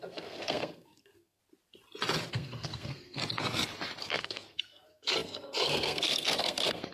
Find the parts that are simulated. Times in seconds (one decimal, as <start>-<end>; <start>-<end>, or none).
0.0-1.4; 2.3-3.2; 4.0-6.9